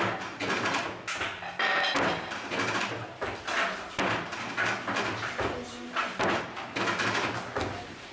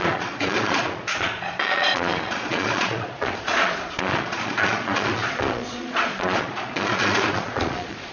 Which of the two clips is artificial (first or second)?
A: second